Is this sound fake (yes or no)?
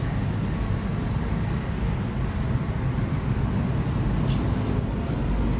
no